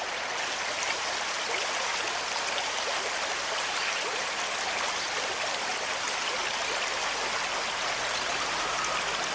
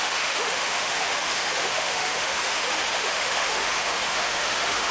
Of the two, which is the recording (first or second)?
first